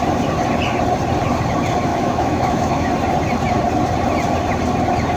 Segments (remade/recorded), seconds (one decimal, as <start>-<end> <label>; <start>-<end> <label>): 0.0-1.9 recorded; 1.9-2.9 remade; 2.9-5.2 recorded